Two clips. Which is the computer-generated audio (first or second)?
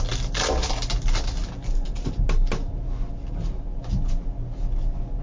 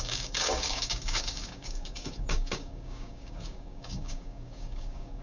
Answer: second